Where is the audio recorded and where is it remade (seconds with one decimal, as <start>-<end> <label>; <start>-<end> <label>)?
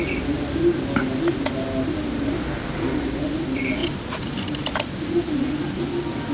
0.0-6.3 recorded